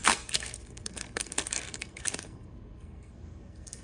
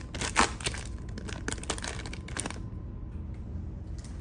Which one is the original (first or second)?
second